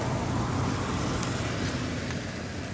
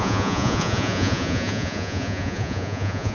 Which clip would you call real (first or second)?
first